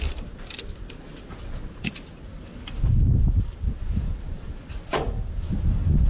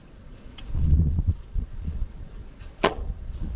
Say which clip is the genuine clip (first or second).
first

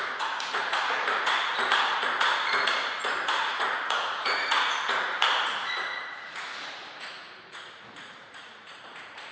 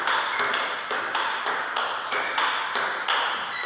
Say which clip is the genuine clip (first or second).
second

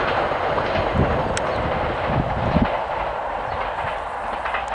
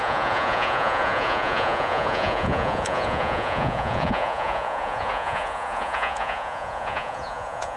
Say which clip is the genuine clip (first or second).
first